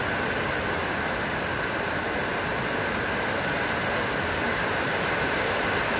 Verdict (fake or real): real